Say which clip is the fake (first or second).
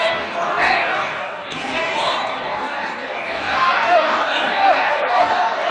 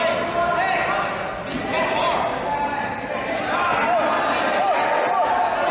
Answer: first